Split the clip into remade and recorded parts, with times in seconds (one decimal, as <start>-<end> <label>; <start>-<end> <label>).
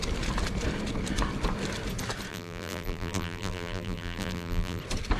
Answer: 0.0-2.3 recorded; 2.3-4.8 remade; 4.8-5.2 recorded